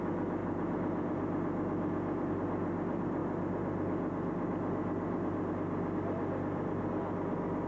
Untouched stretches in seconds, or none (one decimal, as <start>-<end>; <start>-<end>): 0.0-7.7